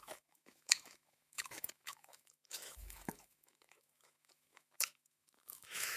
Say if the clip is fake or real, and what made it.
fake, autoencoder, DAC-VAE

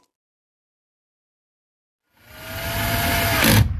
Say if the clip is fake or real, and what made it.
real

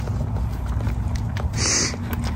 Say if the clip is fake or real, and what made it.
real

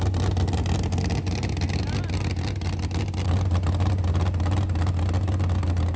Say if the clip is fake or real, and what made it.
real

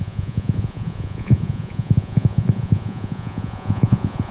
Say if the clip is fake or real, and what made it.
fake, vocoder, Vocos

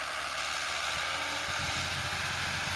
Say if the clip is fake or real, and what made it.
real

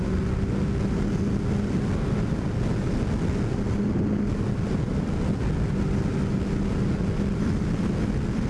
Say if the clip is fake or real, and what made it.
real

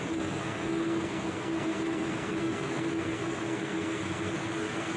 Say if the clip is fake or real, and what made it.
fake, codec, SNAC